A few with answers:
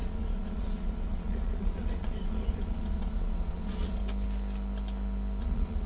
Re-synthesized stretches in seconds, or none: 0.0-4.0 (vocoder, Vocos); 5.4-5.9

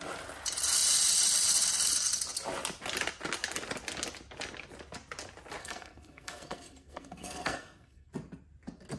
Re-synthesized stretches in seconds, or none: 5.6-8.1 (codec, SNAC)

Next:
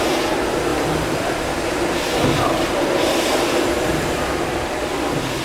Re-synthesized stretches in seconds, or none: none

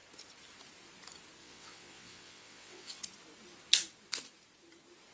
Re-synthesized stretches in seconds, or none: 1.4-3.0 (vocoder, WaveNeXt)

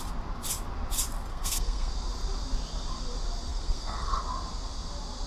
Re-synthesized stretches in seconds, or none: 1.3-1.9 (codec, SNAC); 3.5-4.2